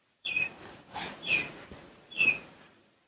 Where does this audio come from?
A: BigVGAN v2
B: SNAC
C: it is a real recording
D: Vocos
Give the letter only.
D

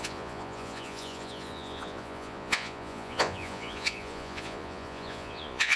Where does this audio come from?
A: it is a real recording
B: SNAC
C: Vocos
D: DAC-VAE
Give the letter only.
C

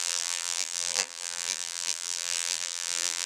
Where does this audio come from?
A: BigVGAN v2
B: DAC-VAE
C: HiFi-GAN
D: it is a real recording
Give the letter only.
A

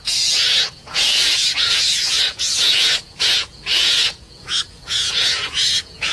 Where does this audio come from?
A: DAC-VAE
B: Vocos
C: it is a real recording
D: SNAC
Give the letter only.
B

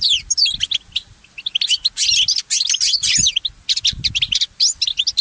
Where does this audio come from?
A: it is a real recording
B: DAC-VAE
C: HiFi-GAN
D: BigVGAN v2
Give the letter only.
A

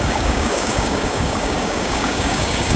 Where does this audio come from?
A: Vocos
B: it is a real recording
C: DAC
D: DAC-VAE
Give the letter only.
C